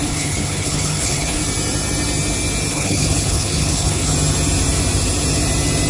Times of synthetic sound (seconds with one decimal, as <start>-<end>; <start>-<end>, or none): 0.0-1.4; 2.7-4.1